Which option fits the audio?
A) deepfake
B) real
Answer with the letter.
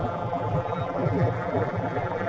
A